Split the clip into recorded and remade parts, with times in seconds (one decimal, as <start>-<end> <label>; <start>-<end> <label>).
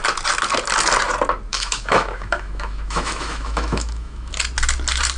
0.0-1.5 recorded; 1.5-4.3 remade; 4.3-5.2 recorded